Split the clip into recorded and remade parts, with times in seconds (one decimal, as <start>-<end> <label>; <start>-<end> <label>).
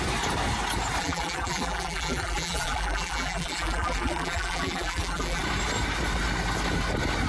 0.0-1.0 recorded; 1.0-5.4 remade; 5.4-7.3 recorded